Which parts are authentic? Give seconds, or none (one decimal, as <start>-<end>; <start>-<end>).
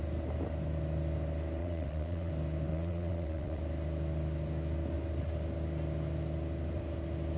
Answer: 0.0-1.6; 2.3-2.7; 3.6-7.4